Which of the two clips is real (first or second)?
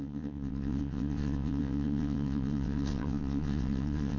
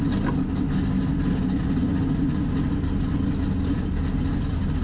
second